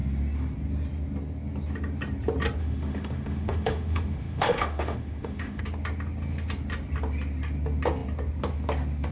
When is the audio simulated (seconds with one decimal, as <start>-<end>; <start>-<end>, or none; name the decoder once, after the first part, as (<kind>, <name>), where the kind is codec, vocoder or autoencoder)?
2.6-5.6 (autoencoder, DAC-VAE)